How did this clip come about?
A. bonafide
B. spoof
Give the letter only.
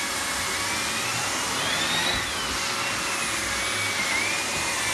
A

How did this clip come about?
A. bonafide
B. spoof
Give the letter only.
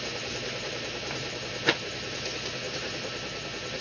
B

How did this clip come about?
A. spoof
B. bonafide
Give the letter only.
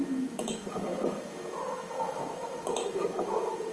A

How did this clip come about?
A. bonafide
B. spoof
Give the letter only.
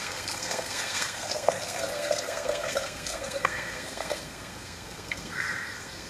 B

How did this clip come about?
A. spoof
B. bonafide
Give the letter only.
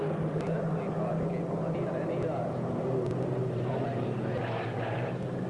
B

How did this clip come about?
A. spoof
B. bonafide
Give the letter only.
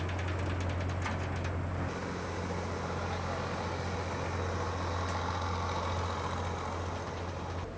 B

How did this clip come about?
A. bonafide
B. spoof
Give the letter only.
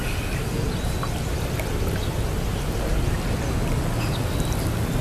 A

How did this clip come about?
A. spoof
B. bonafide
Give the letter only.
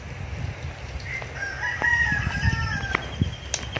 B